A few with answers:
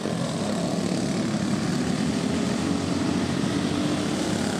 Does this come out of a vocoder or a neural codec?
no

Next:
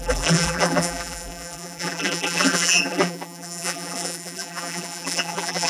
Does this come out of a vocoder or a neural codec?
yes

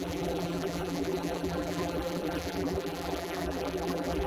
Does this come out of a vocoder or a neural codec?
yes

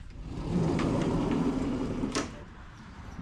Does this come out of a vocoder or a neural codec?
yes